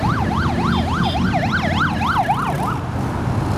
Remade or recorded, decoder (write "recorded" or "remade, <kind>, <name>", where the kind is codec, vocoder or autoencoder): recorded